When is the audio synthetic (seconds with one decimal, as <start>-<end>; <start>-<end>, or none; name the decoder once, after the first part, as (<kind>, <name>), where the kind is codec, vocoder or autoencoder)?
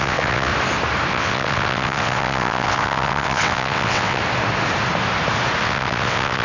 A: 0.0-0.5 (vocoder, WaveNeXt); 1.1-4.2; 5.6-6.4